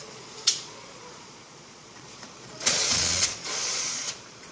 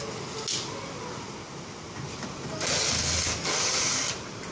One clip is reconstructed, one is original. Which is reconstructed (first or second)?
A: first